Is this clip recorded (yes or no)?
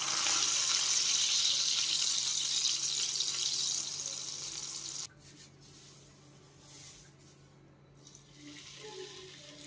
yes